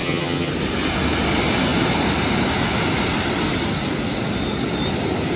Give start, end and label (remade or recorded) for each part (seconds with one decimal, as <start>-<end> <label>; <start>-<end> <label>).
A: 0.0-0.5 remade; 0.5-5.4 recorded